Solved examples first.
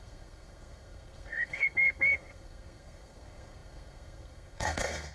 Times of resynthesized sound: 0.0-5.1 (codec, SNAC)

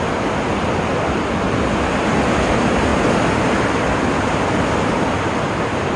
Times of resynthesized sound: none